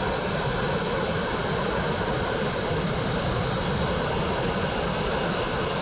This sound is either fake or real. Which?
real